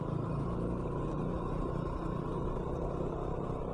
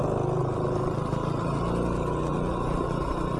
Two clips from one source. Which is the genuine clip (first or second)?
second